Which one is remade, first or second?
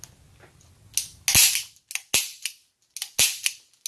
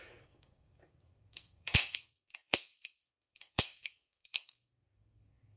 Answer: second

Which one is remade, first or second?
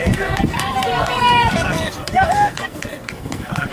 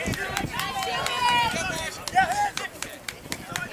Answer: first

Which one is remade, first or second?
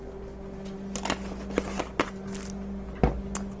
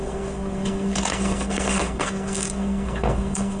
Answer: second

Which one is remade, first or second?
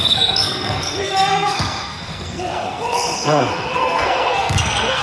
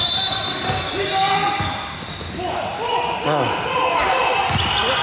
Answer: first